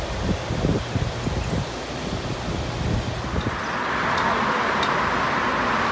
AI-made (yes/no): no